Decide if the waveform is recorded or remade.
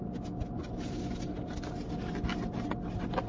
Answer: recorded